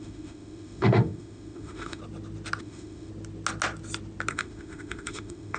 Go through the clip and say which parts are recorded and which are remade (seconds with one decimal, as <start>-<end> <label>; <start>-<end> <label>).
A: 0.0-2.0 remade; 2.0-2.6 recorded; 2.6-3.1 remade; 3.1-4.3 recorded; 4.3-5.6 remade